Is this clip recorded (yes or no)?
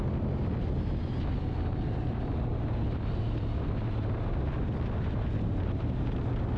yes